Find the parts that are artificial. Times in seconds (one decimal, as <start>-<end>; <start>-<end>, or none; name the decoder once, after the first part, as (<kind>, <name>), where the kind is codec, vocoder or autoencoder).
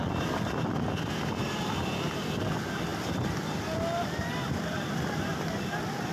0.0-0.5 (vocoder, BigVGAN v2); 2.9-6.1